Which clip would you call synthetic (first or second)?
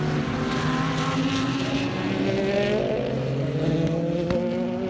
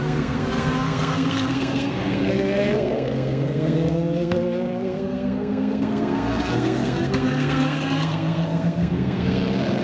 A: second